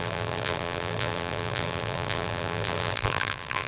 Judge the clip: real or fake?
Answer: fake